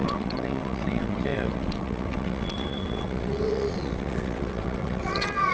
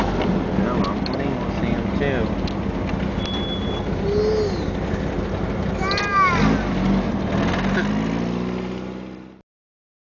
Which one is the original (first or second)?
second